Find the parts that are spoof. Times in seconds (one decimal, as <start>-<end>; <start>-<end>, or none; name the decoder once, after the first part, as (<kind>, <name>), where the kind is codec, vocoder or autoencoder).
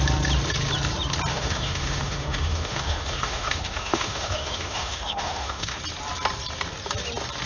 1.3-5.8 (autoencoder, DAC-VAE)